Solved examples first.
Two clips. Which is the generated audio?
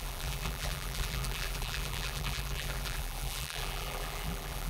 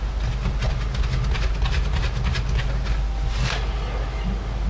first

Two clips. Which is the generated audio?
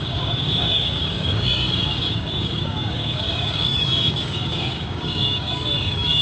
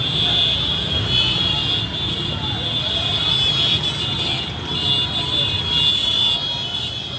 first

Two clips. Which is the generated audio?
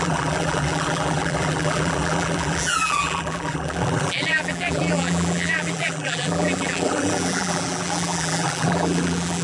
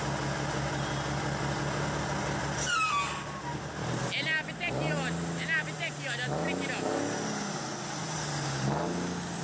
first